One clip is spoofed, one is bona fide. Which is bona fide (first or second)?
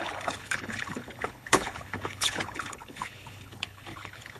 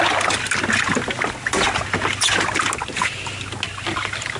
second